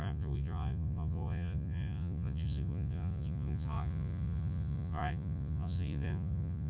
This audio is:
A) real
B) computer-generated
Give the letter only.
B